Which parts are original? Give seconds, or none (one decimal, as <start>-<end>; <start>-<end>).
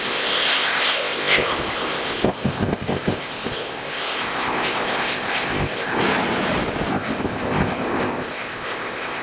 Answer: 6.0-6.9